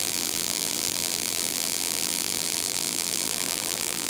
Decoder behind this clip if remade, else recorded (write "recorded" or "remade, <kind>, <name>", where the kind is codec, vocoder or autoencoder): remade, vocoder, BigVGAN v2